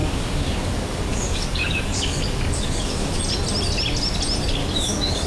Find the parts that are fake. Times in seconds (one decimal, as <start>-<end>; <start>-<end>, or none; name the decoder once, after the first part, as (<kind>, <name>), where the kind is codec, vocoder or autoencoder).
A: 0.0-3.2 (codec, DAC); 4.6-5.3

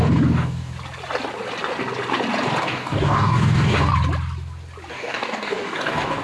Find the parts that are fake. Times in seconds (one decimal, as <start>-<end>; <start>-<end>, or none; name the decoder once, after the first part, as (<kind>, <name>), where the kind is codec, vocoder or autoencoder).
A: 0.0-0.7 (codec, DAC); 2.6-3.9; 4.9-6.2

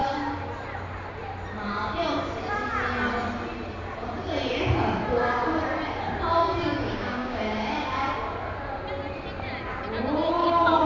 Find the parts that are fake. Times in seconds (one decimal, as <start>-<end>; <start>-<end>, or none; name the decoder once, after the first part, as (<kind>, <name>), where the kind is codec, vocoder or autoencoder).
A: 6.4-7.4 (codec, DAC); 10.4-10.9